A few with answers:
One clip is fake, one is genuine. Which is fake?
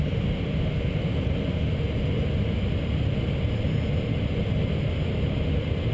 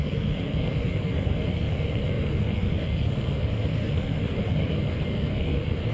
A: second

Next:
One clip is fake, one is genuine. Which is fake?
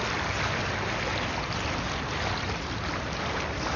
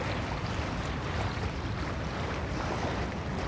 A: second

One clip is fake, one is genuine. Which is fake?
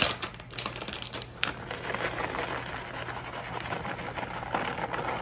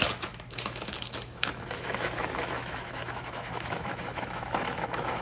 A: second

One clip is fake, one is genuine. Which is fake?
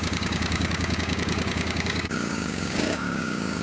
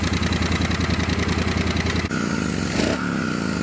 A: first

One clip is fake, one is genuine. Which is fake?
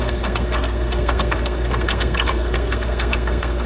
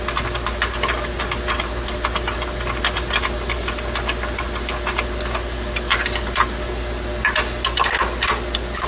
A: first